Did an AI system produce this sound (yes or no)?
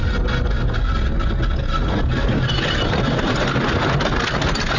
no